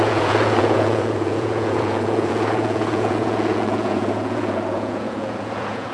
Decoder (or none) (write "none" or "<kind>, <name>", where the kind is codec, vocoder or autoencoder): vocoder, Vocos